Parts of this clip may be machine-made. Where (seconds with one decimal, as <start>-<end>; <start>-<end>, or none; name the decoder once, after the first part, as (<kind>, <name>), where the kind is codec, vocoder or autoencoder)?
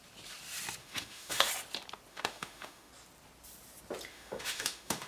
0.8-1.5 (autoencoder, DAC-VAE); 2.1-2.9; 4.1-5.1